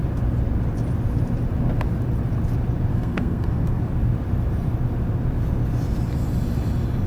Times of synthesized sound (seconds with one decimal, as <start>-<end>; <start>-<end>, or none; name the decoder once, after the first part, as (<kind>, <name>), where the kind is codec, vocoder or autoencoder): 2.9-3.8 (codec, SNAC)